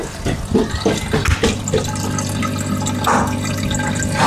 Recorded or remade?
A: recorded